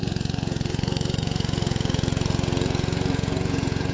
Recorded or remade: remade